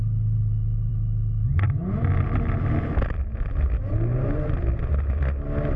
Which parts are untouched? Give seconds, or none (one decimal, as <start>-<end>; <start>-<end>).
0.0-5.8